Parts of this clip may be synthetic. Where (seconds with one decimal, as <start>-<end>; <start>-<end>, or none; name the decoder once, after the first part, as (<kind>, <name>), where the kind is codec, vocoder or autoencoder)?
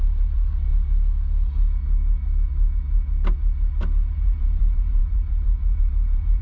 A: 0.0-0.7 (vocoder, BigVGAN v2); 4.1-6.4